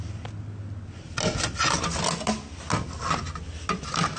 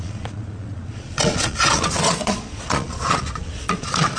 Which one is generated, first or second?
second